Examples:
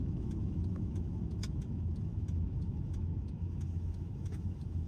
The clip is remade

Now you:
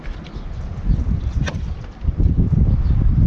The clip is recorded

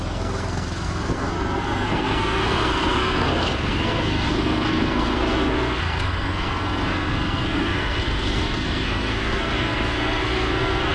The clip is remade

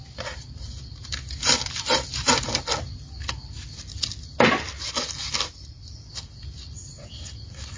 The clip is recorded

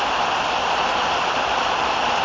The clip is recorded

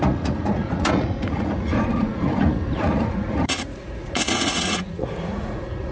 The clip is remade